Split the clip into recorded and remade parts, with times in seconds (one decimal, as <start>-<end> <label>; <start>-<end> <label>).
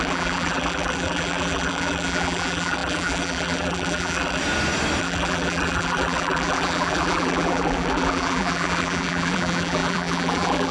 0.0-4.4 remade; 4.4-5.0 recorded; 5.0-10.7 remade